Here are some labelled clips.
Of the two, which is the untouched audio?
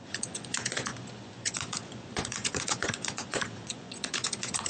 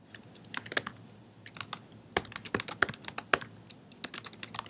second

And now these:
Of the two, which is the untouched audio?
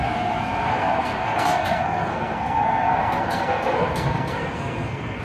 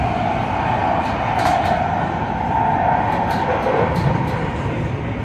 second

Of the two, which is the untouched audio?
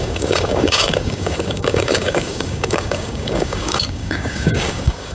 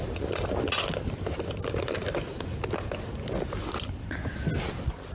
second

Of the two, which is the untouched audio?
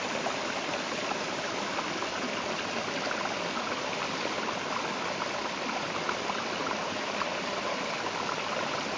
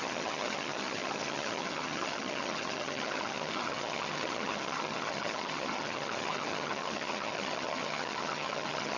first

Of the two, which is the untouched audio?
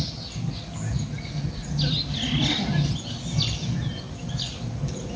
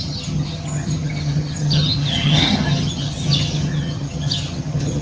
first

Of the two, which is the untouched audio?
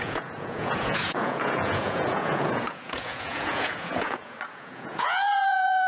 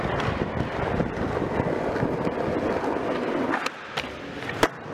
second